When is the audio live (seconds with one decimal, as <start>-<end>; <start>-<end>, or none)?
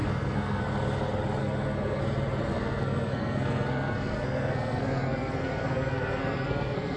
0.6-1.4; 2.0-2.5